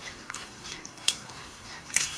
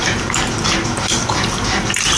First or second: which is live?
second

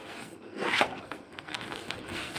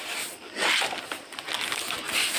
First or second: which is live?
second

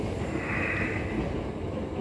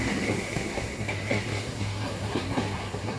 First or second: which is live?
first